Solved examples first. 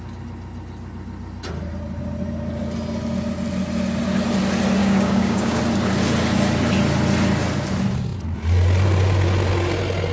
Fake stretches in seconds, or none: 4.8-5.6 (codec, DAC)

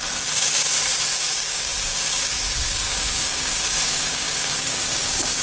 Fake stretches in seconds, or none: 0.0-5.4 (codec, DAC)

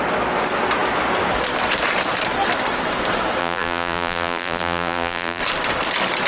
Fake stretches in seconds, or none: 3.4-5.4 (vocoder, BigVGAN v2)

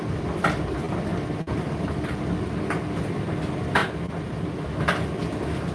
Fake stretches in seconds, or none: none